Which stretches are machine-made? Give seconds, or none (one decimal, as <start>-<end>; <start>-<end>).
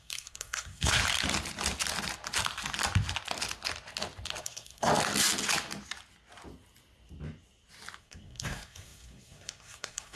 0.0-1.0; 4.4-4.9; 8.0-10.2